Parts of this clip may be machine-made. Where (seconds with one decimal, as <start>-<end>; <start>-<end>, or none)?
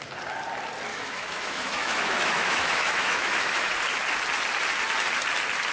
0.9-3.7